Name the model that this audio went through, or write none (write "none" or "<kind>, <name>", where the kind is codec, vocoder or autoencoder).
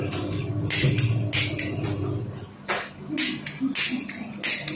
none